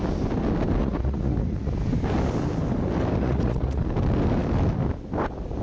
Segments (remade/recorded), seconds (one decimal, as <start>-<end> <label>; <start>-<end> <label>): 0.0-0.8 recorded; 0.8-1.7 remade; 1.7-3.2 recorded; 3.2-3.8 remade; 3.8-5.6 recorded